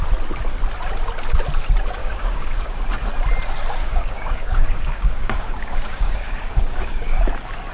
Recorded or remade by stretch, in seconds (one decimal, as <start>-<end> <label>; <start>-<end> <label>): 0.0-2.0 recorded; 2.0-2.8 remade; 2.8-3.8 recorded; 3.8-7.2 remade; 7.2-7.7 recorded